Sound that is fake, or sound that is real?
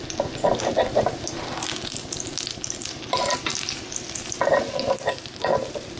real